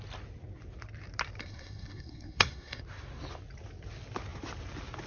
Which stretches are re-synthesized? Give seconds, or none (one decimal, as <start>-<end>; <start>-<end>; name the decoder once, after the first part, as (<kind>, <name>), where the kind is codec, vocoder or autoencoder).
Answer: 1.4-2.8 (codec, SNAC)

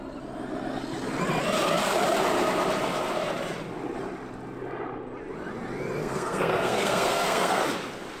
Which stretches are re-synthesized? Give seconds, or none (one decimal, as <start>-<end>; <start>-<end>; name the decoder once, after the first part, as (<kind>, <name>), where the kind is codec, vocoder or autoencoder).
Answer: 6.0-7.6 (codec, SNAC)

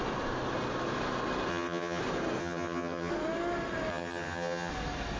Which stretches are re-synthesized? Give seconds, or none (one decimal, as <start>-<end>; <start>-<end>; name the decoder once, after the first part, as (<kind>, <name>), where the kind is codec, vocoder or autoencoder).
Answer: 1.5-2.0 (vocoder, HiFi-GAN); 2.4-3.1; 3.9-4.7

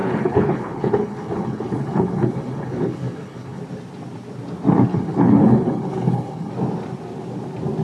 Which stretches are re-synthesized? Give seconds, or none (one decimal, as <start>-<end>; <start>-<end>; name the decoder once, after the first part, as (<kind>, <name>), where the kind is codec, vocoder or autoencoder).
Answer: 0.0-3.6 (codec, HILCodec); 4.9-6.5

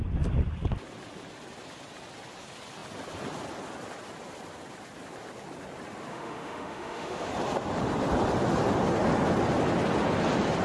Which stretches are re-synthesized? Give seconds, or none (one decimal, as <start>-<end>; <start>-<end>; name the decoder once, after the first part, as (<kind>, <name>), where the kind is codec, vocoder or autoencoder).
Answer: 6.1-7.3 (autoencoder, DAC-VAE)

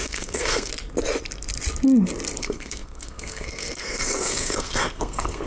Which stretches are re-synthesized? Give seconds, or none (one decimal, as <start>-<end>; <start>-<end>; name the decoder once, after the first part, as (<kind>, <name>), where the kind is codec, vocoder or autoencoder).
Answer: 0.0-0.7 (codec, SNAC); 2.4-5.5

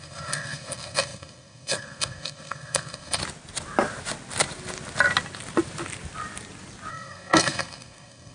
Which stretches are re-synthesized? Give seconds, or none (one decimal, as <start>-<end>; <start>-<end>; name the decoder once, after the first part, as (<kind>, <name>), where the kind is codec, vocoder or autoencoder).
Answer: 0.0-3.2 (codec, SNAC); 6.9-8.3

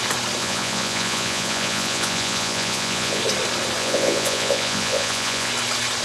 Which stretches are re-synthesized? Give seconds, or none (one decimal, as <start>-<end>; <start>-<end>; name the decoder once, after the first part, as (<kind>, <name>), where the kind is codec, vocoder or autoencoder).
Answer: 0.4-3.2 (vocoder, Vocos); 3.8-5.5